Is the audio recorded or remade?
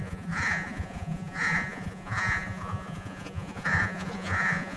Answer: remade